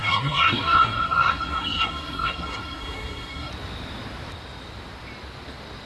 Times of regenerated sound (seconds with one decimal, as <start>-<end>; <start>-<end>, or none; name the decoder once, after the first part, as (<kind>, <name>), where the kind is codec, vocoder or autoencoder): 0.0-3.5 (codec, SNAC)